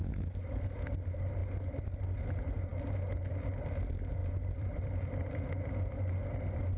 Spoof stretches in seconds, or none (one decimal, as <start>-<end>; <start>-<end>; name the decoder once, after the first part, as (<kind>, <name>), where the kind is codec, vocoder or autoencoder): 4.2-5.5 (vocoder, BigVGAN v2)